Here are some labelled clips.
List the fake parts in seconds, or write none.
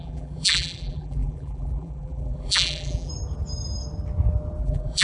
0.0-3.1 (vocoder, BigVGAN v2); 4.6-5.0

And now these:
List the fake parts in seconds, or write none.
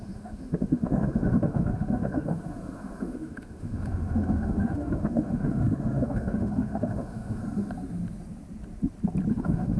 0.0-7.4 (autoencoder, DAC-VAE); 9.3-9.8